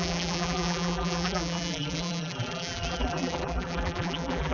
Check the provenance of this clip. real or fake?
fake